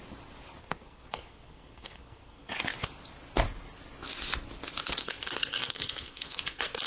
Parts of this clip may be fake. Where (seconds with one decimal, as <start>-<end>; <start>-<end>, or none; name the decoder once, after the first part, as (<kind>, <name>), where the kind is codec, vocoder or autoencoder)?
0.6-2.5 (codec, SNAC); 5.0-6.9